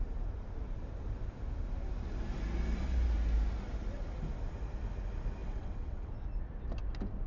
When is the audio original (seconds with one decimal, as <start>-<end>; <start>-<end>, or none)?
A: 0.0-5.4; 6.1-7.3